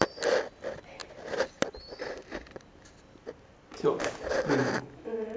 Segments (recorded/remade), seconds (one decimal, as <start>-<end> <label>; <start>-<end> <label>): 0.0-4.6 recorded; 4.6-5.4 remade